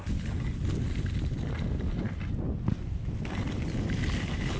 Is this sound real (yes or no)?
yes